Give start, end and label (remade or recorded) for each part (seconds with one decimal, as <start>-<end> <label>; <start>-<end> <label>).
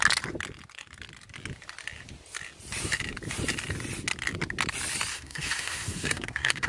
0.0-5.1 recorded; 5.1-6.7 remade